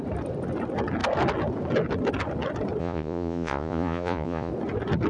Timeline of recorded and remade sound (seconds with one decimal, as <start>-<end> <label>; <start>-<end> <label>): 0.0-2.8 recorded; 2.8-4.5 remade; 4.5-5.1 recorded